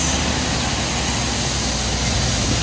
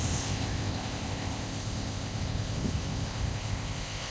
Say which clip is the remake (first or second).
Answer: second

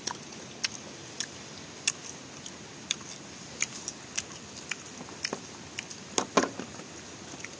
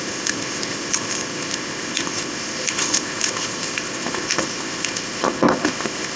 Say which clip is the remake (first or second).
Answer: second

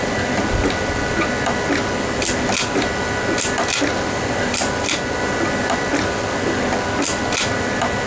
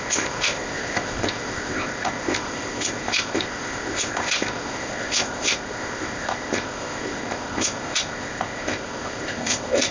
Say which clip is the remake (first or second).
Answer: second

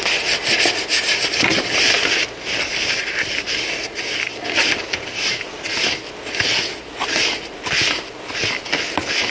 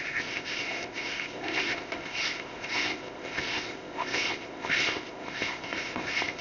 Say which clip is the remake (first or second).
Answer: second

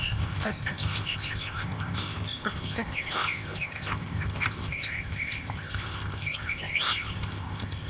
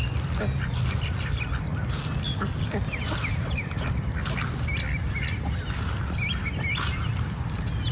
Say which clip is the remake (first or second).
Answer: first